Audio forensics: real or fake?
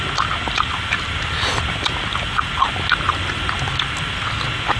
real